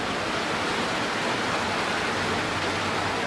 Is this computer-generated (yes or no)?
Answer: yes